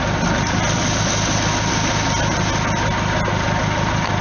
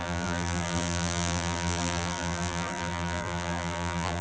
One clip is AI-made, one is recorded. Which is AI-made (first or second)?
second